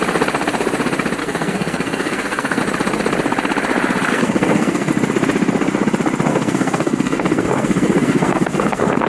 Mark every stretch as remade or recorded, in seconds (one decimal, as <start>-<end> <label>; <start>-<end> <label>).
0.0-1.2 recorded; 1.2-2.6 remade; 2.6-4.1 recorded; 4.1-4.9 remade; 4.9-6.3 recorded; 6.3-9.1 remade